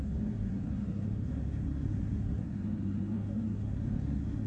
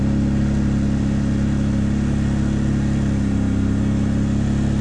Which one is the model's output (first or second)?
first